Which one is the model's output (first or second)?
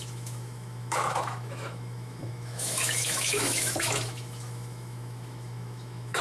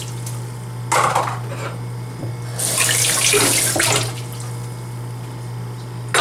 first